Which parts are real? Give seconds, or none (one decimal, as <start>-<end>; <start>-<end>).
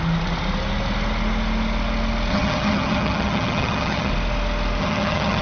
0.0-2.3; 4.1-4.8